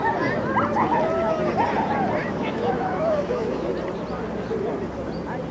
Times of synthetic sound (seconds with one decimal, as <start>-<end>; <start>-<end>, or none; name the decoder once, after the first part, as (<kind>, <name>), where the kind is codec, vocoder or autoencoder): 2.2-3.7 (autoencoder, DAC-VAE)

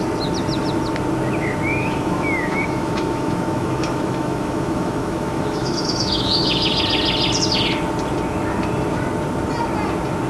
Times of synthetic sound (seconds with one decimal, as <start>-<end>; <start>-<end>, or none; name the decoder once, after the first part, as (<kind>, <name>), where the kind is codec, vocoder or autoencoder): 1.7-6.8 (autoencoder, DAC-VAE)

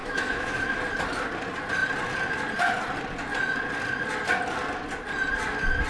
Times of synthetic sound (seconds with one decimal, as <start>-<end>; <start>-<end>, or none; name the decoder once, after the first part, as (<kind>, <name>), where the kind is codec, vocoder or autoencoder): 0.0-0.8 (autoencoder, DAC-VAE)

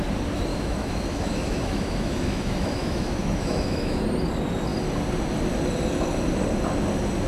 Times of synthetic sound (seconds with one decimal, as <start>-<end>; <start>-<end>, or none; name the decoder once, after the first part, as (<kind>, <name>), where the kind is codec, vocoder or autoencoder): 0.5-4.0 (autoencoder, DAC-VAE)

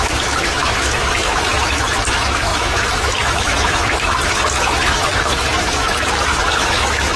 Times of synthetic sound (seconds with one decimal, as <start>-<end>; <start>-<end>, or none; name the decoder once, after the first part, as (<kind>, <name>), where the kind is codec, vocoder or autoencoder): 0.0-7.2 (autoencoder, DAC-VAE)

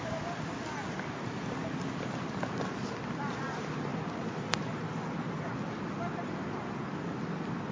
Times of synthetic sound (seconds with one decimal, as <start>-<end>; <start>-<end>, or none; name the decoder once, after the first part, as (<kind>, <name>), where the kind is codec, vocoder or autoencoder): none

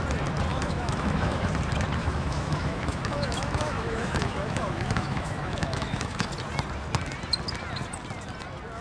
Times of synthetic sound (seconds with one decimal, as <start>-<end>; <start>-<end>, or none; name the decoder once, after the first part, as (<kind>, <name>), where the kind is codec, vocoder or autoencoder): 0.5-1.5 (autoencoder, DAC-VAE); 2.0-6.3